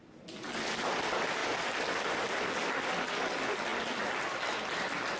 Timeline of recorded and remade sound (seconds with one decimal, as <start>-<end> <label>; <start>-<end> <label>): 0.0-5.2 recorded